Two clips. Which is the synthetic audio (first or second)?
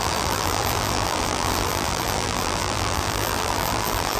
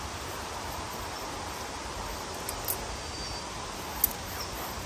first